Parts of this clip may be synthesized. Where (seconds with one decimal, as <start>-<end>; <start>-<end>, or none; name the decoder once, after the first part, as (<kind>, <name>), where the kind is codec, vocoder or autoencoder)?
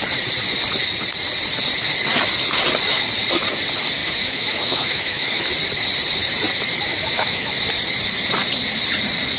4.0-5.5 (autoencoder, DAC-VAE); 6.9-7.6